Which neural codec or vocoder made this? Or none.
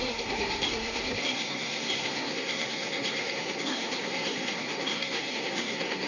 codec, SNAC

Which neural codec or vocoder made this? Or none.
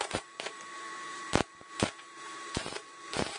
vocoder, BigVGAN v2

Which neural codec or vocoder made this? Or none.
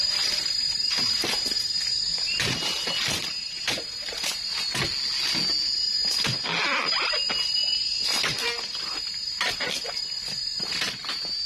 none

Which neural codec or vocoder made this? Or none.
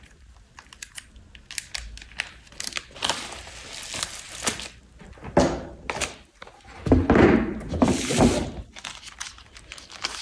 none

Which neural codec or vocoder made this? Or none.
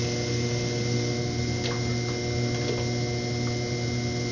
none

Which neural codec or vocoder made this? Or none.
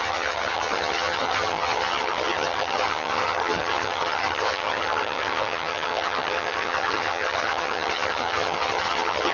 vocoder, HiFi-GAN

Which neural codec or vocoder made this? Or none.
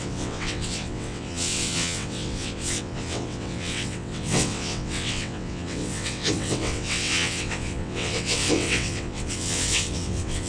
vocoder, WaveNeXt